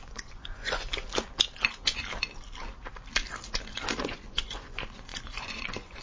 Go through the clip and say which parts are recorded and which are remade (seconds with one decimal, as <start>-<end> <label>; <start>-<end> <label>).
0.0-0.9 remade; 0.9-4.0 recorded; 4.0-6.0 remade